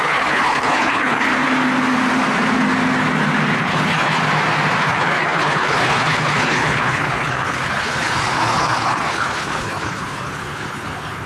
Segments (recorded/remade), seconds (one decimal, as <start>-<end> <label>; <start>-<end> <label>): 0.0-1.3 remade; 1.3-3.6 recorded; 3.6-4.2 remade; 4.2-4.8 recorded; 4.8-11.3 remade